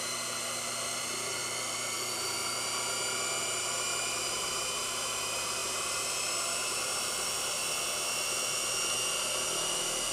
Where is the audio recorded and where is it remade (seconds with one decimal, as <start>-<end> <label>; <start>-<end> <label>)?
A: 0.0-1.4 remade; 1.4-3.4 recorded; 3.4-7.6 remade; 7.6-9.6 recorded; 9.6-10.1 remade